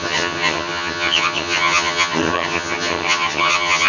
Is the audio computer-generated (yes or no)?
yes